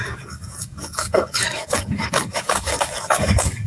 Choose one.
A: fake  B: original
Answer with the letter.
A